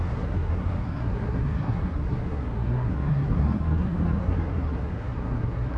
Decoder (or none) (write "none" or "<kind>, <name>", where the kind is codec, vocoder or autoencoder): codec, SNAC